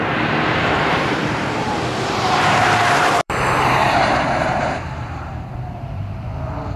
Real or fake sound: fake